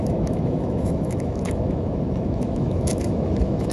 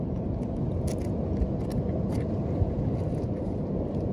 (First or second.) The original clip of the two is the second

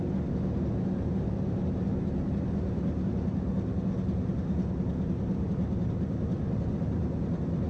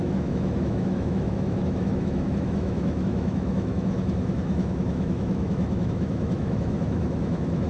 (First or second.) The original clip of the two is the first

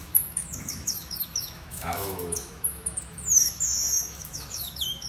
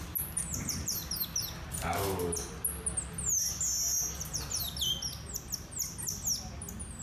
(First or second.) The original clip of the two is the second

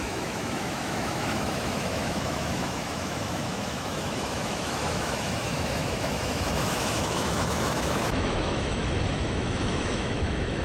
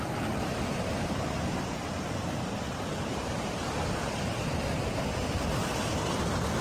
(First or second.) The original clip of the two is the second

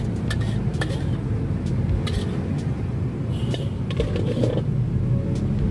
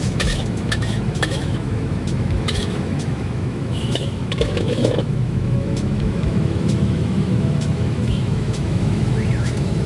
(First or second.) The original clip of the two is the first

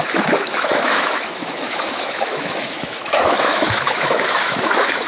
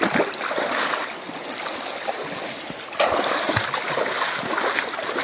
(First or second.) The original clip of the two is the second